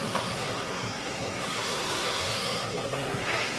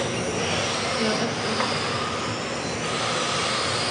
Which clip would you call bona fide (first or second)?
second